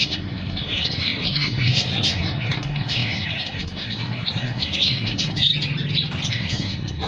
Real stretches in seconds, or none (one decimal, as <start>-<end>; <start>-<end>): 5.5-6.3